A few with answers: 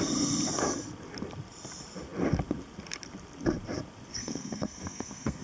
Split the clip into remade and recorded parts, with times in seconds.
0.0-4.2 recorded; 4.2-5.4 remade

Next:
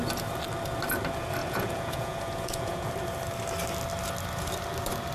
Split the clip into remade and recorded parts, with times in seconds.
0.0-1.4 recorded; 1.4-2.9 remade; 2.9-5.1 recorded

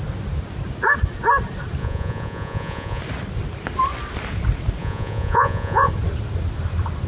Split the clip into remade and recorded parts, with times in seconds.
0.0-1.8 recorded; 1.8-3.0 remade; 3.0-4.8 recorded; 4.8-5.9 remade; 5.9-7.1 recorded